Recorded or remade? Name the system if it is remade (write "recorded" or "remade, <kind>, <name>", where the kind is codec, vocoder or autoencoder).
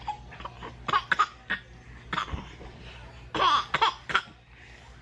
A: recorded